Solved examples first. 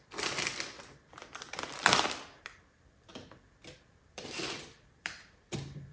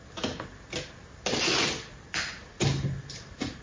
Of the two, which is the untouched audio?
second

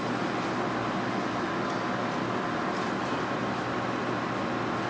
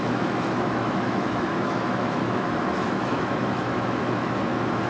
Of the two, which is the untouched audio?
first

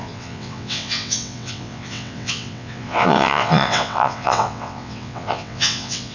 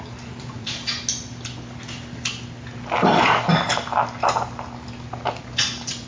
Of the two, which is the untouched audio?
second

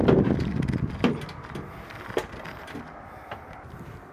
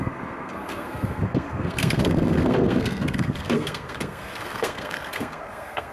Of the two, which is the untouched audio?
first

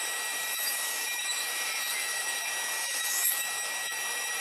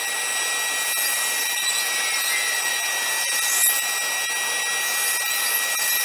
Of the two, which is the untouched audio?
second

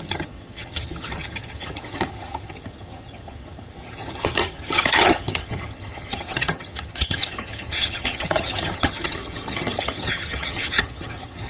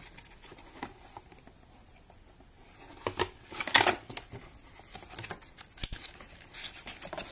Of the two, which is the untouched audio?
second